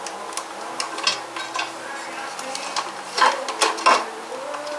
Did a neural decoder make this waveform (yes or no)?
no